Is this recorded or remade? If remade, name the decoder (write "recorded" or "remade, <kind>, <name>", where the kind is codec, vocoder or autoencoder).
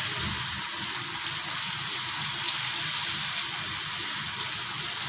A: recorded